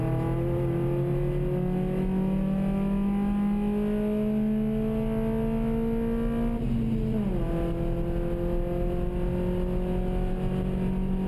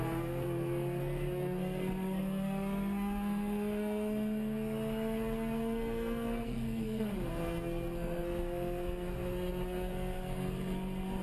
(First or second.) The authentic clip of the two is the first